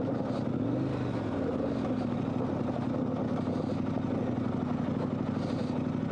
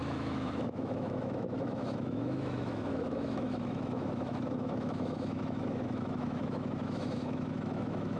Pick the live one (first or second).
first